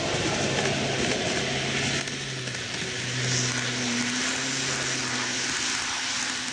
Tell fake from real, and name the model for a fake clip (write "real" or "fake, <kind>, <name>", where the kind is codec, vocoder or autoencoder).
real